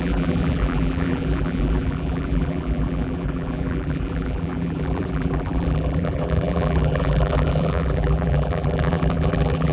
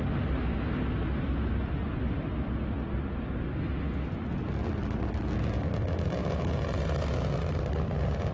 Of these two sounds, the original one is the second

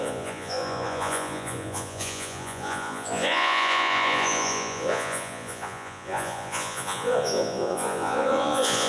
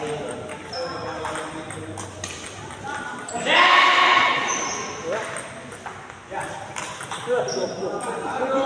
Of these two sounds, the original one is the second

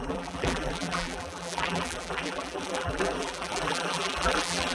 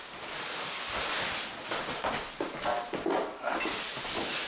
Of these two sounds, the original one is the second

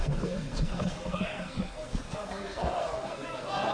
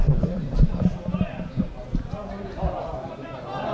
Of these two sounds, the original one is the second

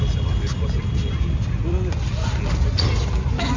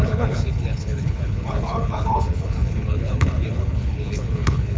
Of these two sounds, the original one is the first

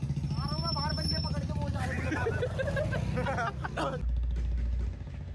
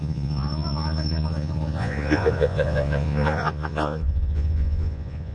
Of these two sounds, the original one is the first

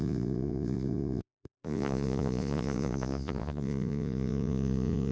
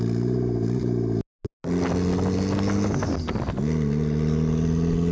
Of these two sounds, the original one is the second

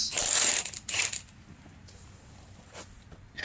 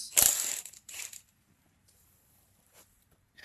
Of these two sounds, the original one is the first